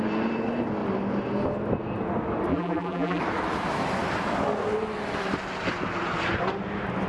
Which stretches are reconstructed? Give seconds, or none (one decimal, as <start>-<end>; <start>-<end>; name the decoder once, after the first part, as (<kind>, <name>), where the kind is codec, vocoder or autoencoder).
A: 2.5-3.2 (vocoder, BigVGAN v2)

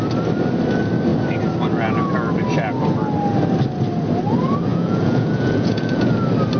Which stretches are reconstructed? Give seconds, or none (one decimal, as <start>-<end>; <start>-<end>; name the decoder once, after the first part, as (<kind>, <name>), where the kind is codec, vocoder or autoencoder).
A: 4.7-6.1 (vocoder, Vocos)

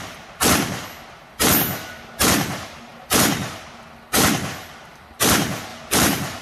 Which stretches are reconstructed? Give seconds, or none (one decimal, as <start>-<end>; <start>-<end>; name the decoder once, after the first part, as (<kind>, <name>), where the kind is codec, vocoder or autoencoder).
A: 5.7-6.4 (vocoder, BigVGAN v2)

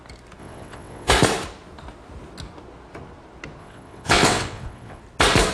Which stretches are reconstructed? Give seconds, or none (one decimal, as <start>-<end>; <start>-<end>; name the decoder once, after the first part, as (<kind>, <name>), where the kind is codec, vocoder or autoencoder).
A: 0.4-1.1 (vocoder, WaveNeXt); 3.6-5.0